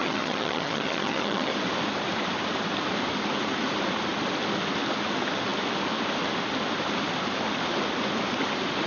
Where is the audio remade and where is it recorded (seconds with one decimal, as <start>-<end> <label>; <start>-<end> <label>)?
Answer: 0.0-1.5 remade; 1.5-8.9 recorded